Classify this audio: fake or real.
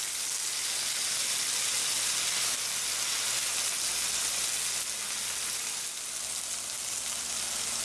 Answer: real